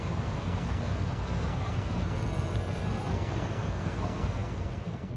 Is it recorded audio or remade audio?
remade